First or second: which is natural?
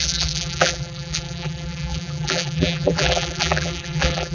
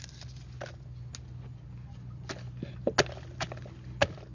second